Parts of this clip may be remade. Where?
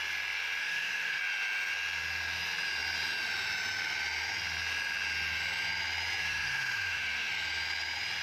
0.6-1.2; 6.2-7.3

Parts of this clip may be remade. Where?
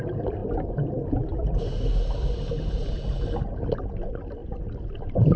none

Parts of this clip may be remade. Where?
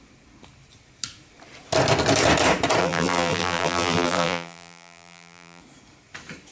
2.8-5.6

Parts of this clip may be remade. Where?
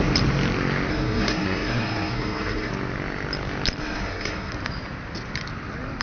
0.9-2.7; 3.8-4.5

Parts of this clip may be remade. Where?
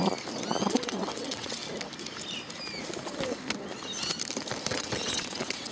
0.6-1.6; 4.7-5.7